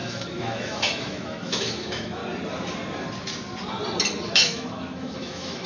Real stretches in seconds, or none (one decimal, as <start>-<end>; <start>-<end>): 2.2-4.3

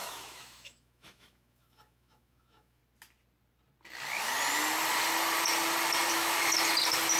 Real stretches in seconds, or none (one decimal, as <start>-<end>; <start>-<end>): 2.8-6.1; 6.5-7.2

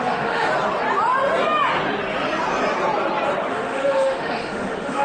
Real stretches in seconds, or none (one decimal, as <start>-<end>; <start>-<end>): 0.5-3.5

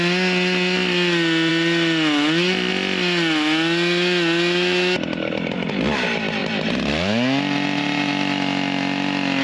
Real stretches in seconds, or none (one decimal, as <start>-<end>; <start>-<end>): 0.0-9.4

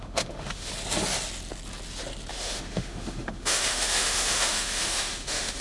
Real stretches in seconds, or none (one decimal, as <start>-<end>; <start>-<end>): 0.7-2.3

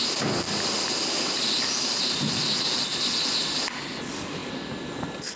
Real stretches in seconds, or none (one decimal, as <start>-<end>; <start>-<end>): 0.0-5.4

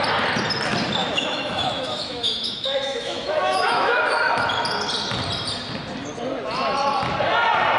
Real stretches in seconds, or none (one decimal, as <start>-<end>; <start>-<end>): 0.0-1.0; 4.0-7.8